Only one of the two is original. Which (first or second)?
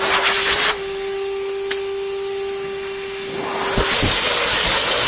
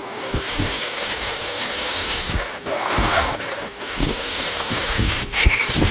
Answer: first